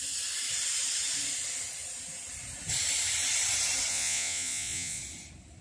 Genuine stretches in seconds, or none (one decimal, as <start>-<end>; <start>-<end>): 0.0-3.9; 5.0-5.6